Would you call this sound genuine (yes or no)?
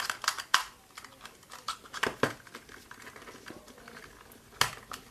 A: yes